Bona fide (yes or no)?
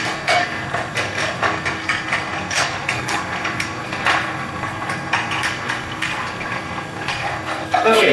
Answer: no